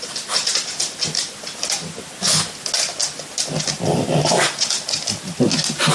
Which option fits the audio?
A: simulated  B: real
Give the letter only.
B